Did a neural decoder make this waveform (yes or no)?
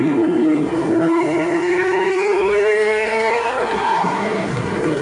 yes